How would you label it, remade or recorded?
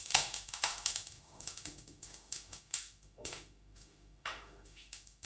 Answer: remade